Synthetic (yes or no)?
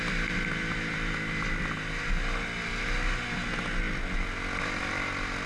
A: no